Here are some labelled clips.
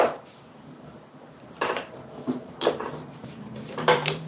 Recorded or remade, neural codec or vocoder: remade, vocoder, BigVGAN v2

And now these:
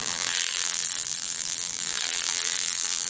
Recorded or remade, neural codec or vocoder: remade, vocoder, BigVGAN v2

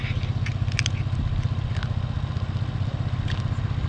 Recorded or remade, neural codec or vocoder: recorded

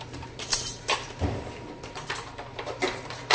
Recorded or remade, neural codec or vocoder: remade, vocoder, BigVGAN v2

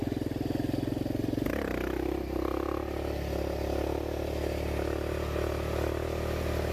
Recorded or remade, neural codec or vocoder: recorded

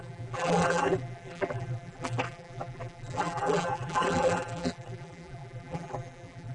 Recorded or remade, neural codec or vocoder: remade, vocoder, BigVGAN v2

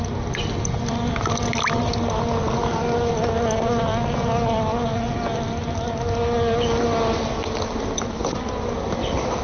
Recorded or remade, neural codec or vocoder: recorded